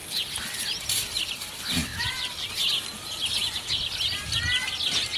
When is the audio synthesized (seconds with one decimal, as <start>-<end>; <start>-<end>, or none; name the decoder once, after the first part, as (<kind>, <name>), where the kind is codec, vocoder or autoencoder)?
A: none